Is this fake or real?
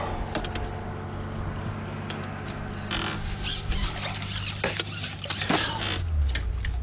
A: real